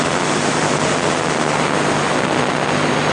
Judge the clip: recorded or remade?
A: recorded